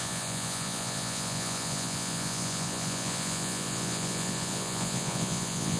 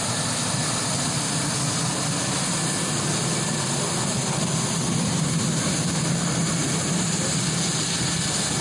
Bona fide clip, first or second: second